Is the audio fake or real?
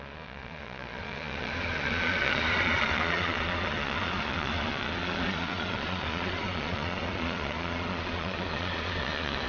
fake